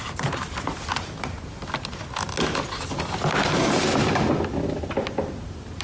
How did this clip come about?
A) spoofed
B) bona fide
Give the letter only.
B